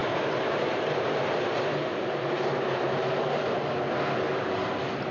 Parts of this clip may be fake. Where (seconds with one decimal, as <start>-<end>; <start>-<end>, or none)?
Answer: 0.0-3.1